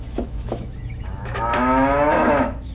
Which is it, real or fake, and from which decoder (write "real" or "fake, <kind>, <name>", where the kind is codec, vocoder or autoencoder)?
fake, autoencoder, DAC-VAE